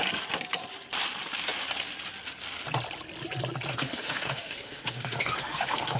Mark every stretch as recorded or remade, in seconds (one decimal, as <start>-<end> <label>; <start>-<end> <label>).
0.0-3.7 recorded; 3.7-6.0 remade